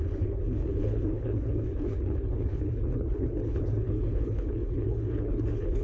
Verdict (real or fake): fake